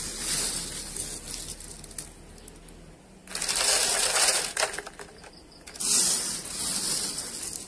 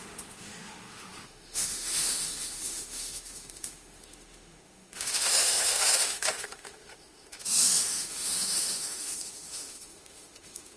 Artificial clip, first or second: second